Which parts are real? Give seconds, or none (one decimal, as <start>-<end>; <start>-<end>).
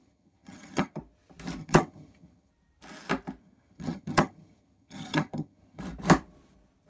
1.0-1.6; 2.5-3.4; 5.8-6.9